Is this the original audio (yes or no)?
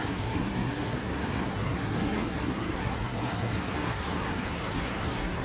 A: no